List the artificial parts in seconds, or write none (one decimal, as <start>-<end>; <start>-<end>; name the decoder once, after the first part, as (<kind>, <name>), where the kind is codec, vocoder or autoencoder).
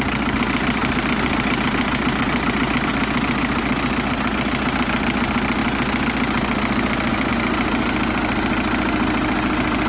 none